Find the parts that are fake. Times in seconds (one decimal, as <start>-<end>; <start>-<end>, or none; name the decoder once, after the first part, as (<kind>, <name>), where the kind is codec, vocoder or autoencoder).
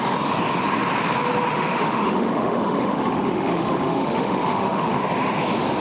1.5-5.0 (autoencoder, DAC-VAE)